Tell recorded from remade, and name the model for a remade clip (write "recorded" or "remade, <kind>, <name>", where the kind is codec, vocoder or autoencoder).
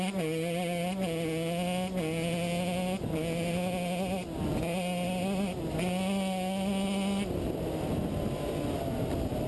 recorded